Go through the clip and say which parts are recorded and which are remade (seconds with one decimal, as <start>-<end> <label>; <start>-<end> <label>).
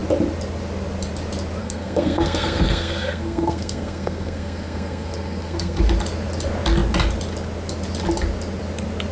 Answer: 0.0-1.6 recorded; 1.6-5.8 remade; 5.8-9.1 recorded